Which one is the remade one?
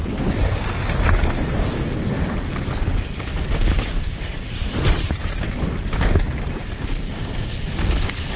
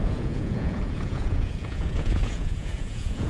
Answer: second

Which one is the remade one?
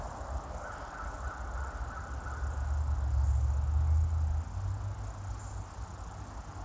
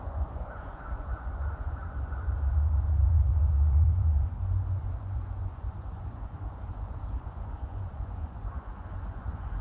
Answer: second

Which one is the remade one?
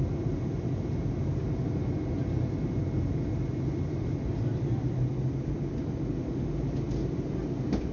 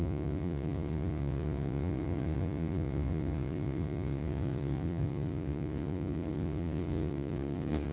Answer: second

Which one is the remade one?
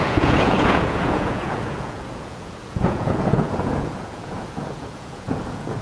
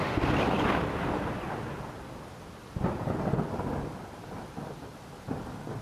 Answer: first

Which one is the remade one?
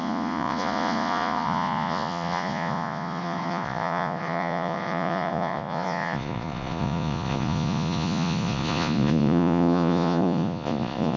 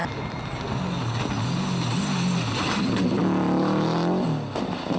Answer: first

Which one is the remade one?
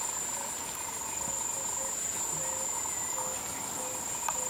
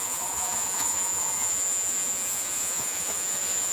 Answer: second